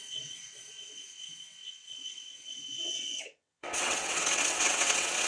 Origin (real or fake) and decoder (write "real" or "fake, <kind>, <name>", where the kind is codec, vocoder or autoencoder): fake, vocoder, WaveNeXt